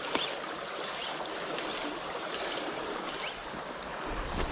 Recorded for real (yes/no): yes